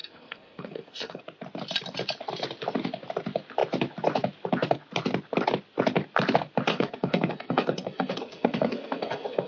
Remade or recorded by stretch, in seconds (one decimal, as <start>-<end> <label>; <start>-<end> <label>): 0.0-1.2 remade; 1.2-6.7 recorded; 6.7-9.5 remade